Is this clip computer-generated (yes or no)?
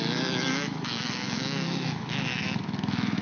yes